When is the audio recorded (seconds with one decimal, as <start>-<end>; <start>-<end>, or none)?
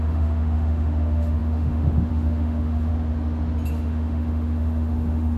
2.9-3.7